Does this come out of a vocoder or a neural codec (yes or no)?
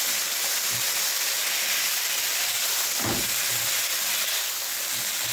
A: no